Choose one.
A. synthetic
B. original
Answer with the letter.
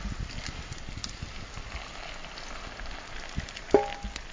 B